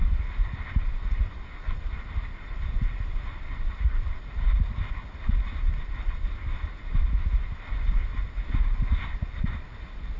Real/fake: real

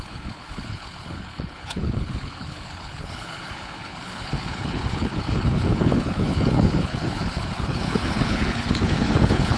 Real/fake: fake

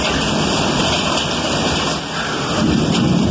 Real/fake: fake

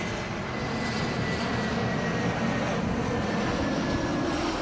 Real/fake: real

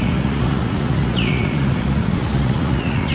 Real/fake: fake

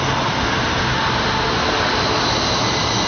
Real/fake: real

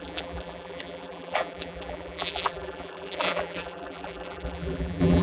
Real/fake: fake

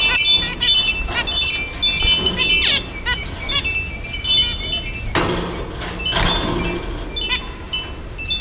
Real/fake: real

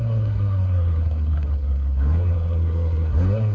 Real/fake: fake